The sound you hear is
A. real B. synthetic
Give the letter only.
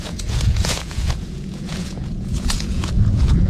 B